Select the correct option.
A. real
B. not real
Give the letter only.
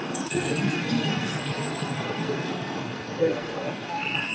B